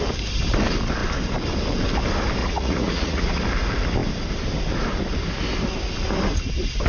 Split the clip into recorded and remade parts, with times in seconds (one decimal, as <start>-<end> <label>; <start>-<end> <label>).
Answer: 0.0-2.4 recorded; 2.4-3.4 remade; 3.4-6.9 recorded

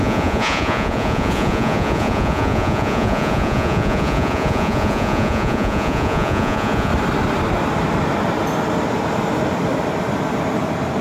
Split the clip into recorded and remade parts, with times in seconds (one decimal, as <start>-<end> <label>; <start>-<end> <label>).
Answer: 0.0-6.9 remade; 6.9-11.0 recorded

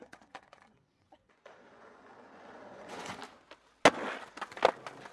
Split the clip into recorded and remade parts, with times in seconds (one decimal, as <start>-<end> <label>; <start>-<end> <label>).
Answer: 0.0-3.2 remade; 3.2-5.1 recorded

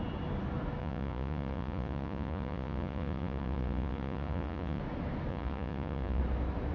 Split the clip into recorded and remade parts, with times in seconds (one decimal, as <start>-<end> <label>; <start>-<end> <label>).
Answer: 0.0-0.8 recorded; 0.8-4.8 remade; 4.8-5.3 recorded; 5.3-6.2 remade; 6.2-6.7 recorded

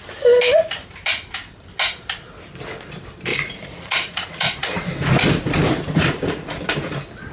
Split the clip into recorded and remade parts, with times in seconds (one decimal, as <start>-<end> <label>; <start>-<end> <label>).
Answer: 0.0-3.3 recorded; 3.3-4.6 remade; 4.6-5.1 recorded; 5.1-6.6 remade; 6.6-7.3 recorded

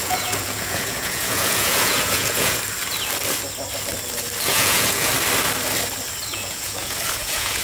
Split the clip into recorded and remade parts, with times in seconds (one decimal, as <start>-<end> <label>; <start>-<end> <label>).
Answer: 0.0-2.6 remade; 2.6-4.5 recorded; 4.5-5.1 remade; 5.1-6.3 recorded; 6.3-7.6 remade